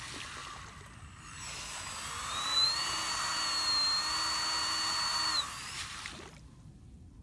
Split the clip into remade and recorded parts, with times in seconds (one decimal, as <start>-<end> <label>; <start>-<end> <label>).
0.0-0.4 recorded; 0.4-3.3 remade; 3.3-5.1 recorded; 5.1-7.2 remade